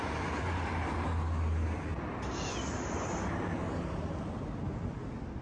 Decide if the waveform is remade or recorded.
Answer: recorded